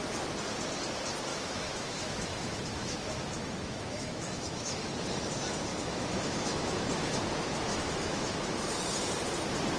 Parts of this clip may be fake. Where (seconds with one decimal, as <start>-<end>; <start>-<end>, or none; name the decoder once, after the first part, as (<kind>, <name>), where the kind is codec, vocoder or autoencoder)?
1.3-4.9 (autoencoder, DAC-VAE); 5.7-7.2; 7.7-8.4